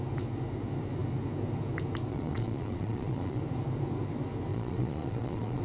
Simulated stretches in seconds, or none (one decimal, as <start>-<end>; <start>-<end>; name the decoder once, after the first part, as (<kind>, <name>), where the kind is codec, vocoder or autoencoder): 2.1-3.4 (vocoder, Vocos); 4.5-5.6

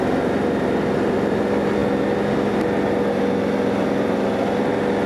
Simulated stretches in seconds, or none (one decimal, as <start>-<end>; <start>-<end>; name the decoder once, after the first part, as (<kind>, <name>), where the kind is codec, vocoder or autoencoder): none

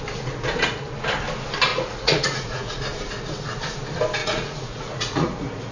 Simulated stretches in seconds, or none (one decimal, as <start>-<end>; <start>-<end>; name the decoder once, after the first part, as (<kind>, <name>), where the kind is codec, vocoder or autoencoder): 1.7-2.8 (vocoder, Vocos); 4.2-5.7

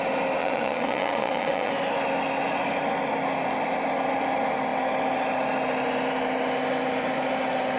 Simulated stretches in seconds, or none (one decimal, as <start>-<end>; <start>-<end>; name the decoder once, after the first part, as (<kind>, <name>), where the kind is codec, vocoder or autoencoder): 0.4-1.7 (vocoder, Vocos)

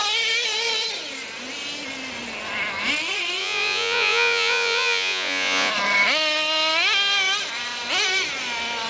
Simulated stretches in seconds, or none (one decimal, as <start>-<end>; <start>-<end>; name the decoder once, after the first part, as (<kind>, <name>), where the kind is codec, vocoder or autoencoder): 3.4-5.7 (vocoder, Vocos)

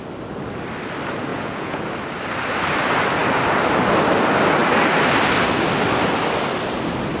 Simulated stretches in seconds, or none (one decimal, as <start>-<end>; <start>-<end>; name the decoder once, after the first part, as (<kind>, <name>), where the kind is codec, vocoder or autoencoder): 1.3-1.8 (vocoder, Vocos)

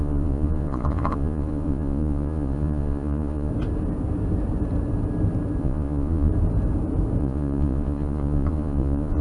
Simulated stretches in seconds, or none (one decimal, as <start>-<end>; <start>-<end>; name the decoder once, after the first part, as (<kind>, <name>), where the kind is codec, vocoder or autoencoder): 0.0-3.5 (vocoder, Vocos); 5.6-6.3; 7.2-9.2